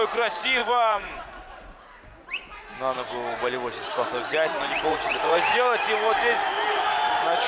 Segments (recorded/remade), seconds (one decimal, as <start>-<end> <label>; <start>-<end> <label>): 0.0-0.6 recorded; 0.6-1.8 remade; 1.8-4.9 recorded; 4.9-5.8 remade; 5.8-7.5 recorded